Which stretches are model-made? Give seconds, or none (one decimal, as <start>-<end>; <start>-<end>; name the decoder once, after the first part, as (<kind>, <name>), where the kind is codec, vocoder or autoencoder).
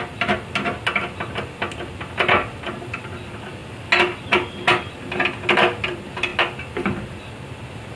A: none